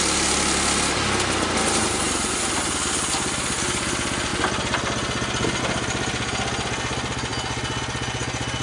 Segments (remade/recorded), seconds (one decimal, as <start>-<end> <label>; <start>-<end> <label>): 0.0-8.6 recorded